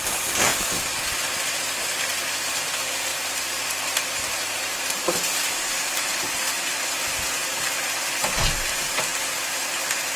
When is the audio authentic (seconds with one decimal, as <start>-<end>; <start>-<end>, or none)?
0.0-3.1; 7.6-10.2